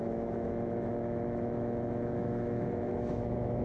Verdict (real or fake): fake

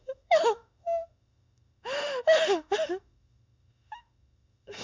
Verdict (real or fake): fake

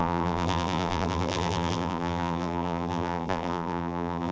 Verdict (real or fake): fake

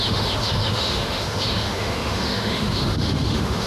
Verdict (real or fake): fake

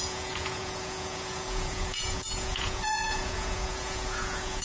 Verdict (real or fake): fake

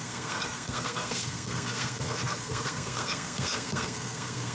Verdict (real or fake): fake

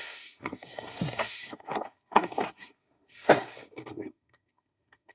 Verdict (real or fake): fake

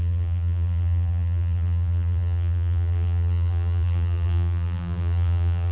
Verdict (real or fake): fake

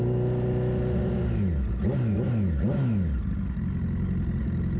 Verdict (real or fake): real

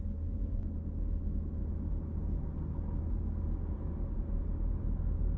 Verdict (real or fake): real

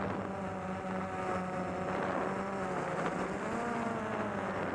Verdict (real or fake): real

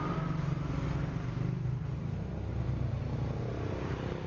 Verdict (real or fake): real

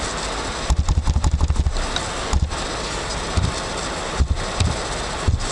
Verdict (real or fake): real